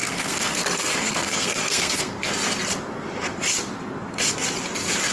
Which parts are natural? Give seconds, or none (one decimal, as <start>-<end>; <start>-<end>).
2.2-5.1